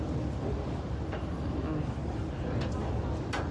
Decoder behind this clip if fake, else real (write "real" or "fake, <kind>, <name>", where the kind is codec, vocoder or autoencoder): real